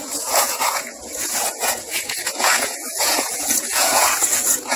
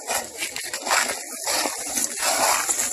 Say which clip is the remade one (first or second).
first